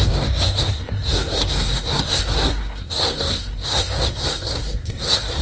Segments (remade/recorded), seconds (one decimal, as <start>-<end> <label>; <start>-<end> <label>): 0.0-5.4 remade